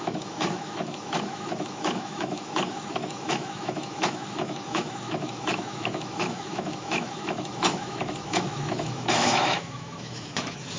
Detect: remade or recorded remade